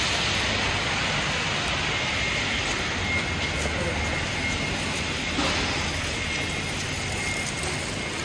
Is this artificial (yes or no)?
no